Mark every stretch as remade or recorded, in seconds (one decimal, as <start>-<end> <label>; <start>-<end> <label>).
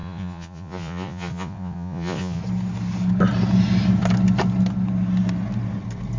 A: 0.0-2.4 remade; 2.4-6.2 recorded